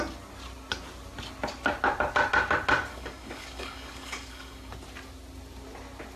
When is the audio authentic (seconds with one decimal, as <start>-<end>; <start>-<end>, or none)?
0.0-2.9; 4.7-6.2